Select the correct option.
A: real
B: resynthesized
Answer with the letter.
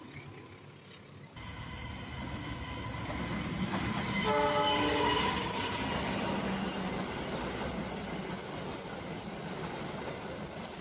A